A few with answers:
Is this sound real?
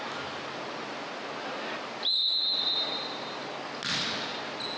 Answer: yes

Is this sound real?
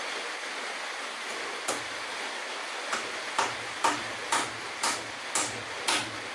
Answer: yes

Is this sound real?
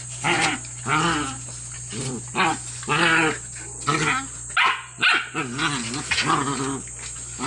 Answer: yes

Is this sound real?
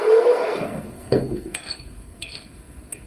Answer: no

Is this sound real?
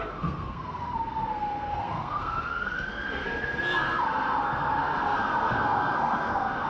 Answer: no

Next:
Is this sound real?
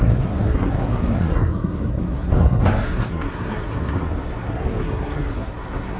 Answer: no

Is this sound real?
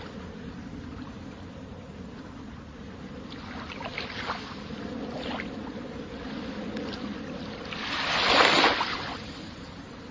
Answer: yes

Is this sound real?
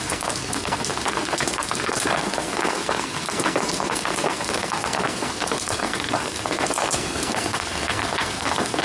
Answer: no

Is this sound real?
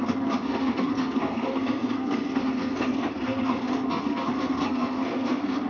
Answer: no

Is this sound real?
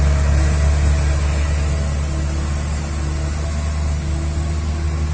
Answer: yes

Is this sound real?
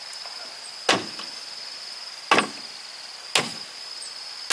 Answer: yes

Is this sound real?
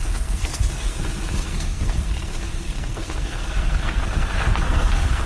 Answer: no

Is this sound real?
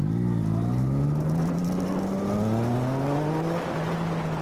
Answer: yes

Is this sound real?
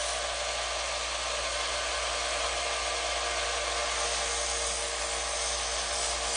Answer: yes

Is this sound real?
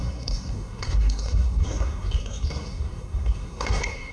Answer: no